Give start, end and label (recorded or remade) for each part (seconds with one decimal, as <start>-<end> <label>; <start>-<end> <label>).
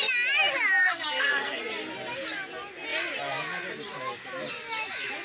0.0-0.8 recorded; 0.8-1.6 remade; 1.6-5.2 recorded